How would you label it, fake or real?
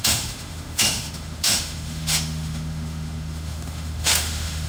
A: fake